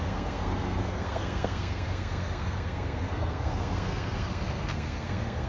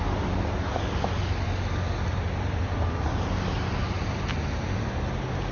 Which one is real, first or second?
second